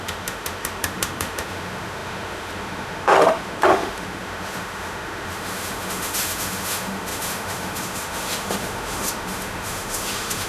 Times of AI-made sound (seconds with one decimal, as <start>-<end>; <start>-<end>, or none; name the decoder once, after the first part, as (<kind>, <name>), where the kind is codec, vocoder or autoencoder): 0.0-10.5 (autoencoder, DAC-VAE)